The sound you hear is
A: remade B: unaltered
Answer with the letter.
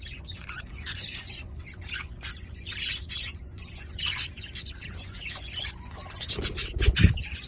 A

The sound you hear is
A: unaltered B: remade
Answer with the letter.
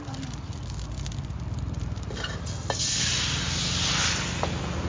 A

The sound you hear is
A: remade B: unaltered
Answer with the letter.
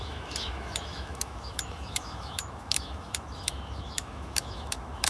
A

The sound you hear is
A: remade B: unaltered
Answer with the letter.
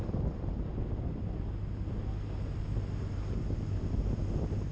B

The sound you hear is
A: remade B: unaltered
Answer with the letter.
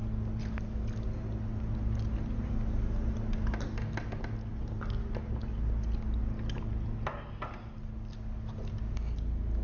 B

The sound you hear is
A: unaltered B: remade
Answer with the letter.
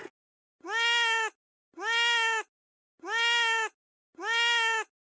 A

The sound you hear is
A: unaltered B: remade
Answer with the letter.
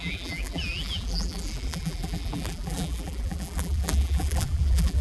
B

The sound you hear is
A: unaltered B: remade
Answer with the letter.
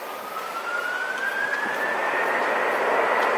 A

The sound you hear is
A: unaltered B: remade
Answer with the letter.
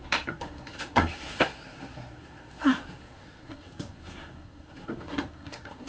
B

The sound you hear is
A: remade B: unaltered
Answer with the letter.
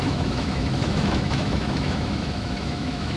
A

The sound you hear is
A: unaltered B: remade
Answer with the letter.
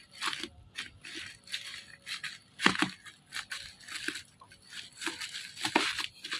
A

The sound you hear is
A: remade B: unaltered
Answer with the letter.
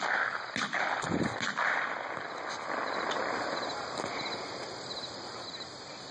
B